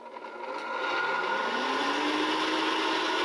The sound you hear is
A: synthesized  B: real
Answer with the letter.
B